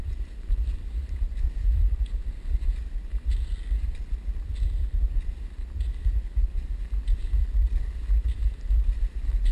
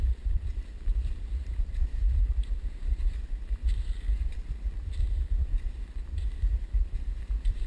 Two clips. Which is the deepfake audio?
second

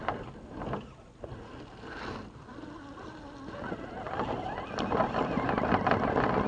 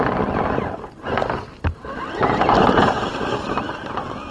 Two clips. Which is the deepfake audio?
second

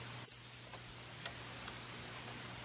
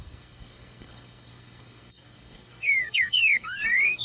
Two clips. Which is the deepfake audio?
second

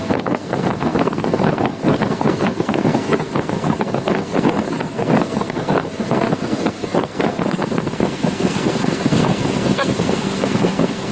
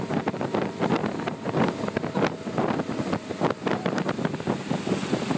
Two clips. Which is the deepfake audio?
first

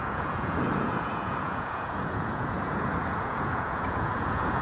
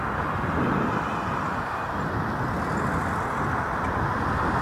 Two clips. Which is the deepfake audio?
first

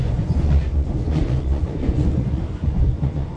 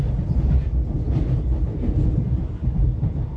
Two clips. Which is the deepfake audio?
first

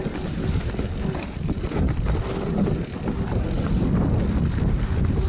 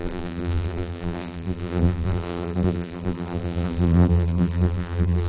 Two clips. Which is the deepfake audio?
second